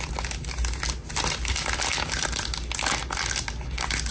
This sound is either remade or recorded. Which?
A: recorded